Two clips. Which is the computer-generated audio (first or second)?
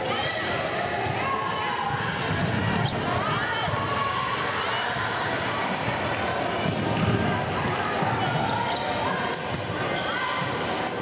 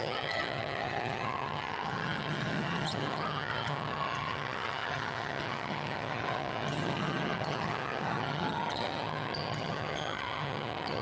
second